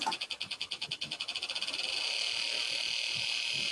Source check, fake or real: real